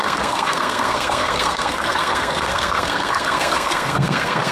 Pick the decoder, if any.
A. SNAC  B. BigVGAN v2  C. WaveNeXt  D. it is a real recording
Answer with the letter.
A